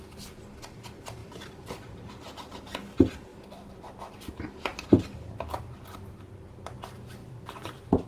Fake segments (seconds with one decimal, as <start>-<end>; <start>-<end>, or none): 1.2-2.1; 4.7-5.6; 7.2-8.1